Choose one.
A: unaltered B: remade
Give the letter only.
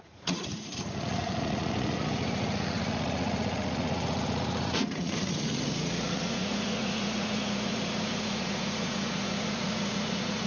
B